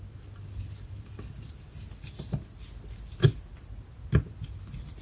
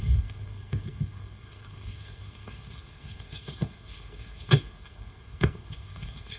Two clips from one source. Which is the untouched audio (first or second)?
first